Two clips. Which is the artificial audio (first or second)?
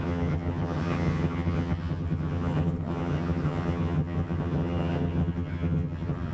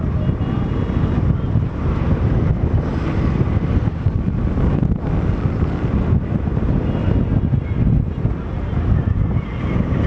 first